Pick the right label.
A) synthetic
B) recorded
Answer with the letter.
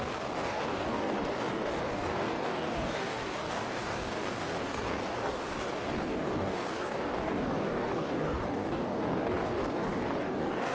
A